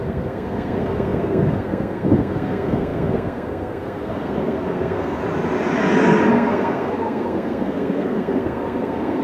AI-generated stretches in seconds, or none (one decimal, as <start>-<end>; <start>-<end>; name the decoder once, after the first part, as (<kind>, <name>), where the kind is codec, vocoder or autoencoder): 0.0-5.2 (codec, SNAC); 6.3-9.2